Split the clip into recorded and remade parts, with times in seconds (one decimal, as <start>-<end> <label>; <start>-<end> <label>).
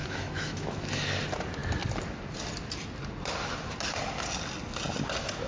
0.0-0.9 remade; 0.9-5.5 recorded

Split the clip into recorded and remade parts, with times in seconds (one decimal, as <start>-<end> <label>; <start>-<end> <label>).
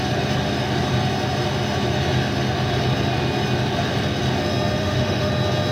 0.0-4.8 recorded; 4.8-5.3 remade; 5.3-5.7 recorded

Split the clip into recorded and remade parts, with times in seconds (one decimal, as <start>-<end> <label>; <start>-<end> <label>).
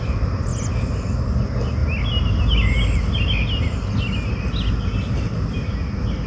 0.0-6.3 recorded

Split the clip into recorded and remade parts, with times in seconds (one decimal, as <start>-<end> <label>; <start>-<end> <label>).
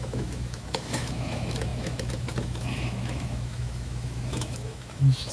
0.0-5.3 remade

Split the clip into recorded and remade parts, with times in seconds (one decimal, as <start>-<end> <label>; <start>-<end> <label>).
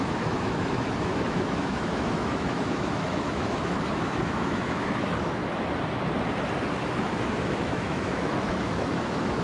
0.0-5.4 remade; 5.4-7.2 recorded; 7.2-9.4 remade